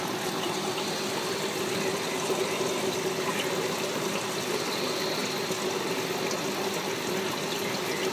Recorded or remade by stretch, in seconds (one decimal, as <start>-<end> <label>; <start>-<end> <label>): 0.0-8.1 recorded